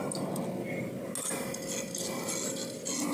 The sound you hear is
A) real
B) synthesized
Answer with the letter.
A